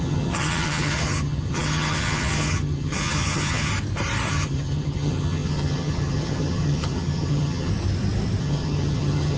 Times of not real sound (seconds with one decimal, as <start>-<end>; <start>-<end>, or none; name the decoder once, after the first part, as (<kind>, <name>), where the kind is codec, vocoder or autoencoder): 0.0-3.7 (vocoder, HiFi-GAN); 4.3-7.7; 8.4-9.4